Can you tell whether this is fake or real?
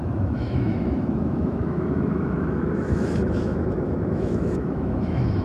fake